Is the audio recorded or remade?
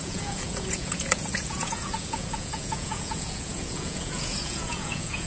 remade